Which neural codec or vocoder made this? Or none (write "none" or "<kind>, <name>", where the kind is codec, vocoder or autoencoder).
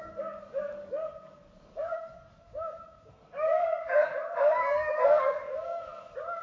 codec, DAC